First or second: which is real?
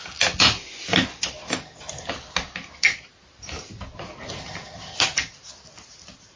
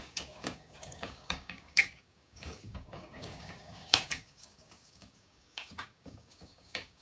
first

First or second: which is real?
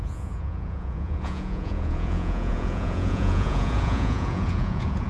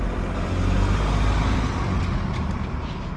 second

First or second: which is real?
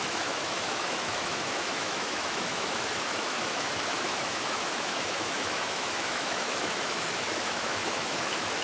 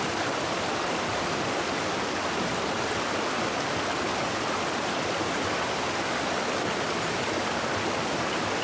second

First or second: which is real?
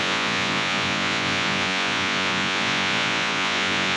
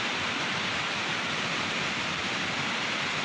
second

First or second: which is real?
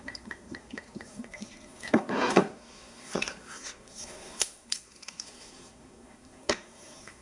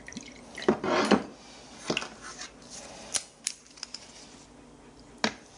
second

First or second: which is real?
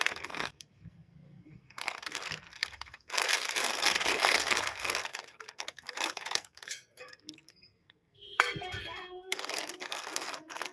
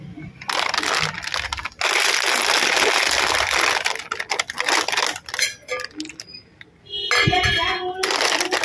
second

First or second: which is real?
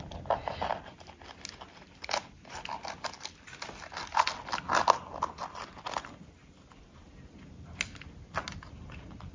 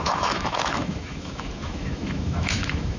first